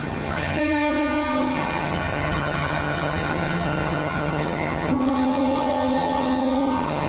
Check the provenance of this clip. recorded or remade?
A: remade